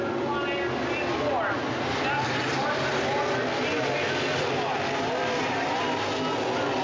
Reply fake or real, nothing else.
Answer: real